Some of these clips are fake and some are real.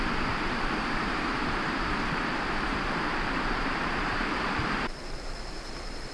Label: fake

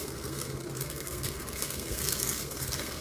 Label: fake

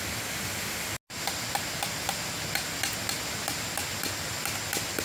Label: real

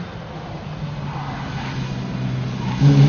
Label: real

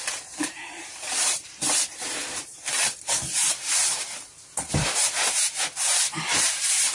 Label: fake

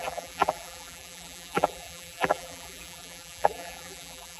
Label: fake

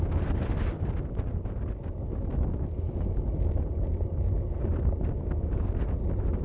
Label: real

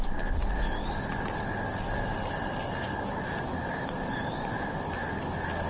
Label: real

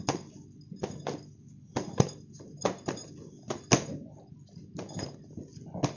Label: real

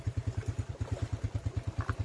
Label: real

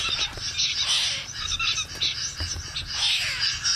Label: real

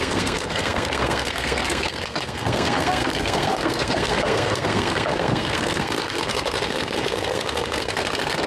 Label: fake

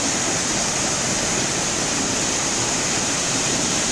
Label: real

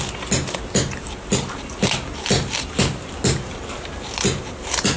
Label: real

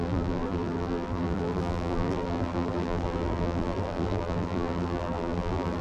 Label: fake